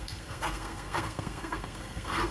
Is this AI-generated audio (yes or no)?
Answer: yes